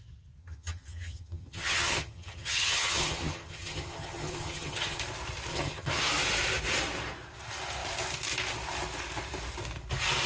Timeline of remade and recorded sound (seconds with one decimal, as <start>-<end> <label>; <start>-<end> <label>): 0.0-0.4 recorded; 0.4-5.0 remade; 5.0-5.5 recorded; 5.5-6.0 remade; 6.0-10.3 recorded